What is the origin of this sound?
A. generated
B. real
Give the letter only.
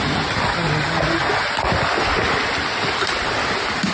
B